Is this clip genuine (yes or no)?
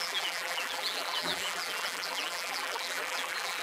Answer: no